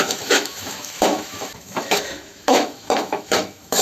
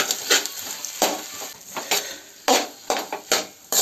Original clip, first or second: second